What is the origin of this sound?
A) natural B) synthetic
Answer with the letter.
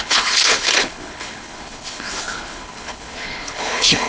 B